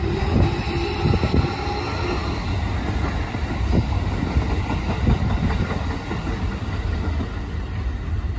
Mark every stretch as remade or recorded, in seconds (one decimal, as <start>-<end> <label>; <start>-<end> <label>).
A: 0.0-8.4 recorded